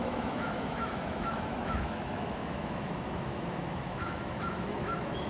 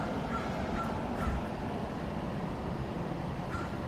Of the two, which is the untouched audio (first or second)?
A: second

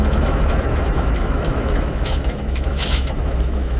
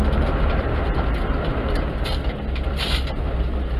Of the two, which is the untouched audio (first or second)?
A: second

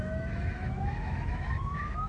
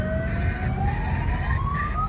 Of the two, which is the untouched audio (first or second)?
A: second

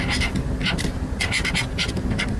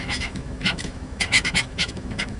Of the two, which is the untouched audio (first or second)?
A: first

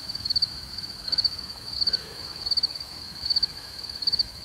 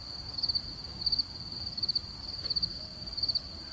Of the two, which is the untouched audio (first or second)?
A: second